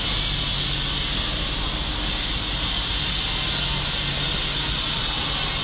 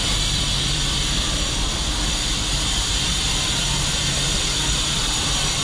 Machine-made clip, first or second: second